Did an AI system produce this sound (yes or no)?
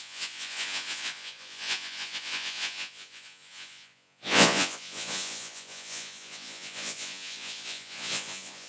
yes